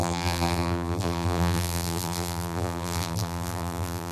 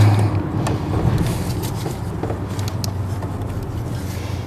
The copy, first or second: first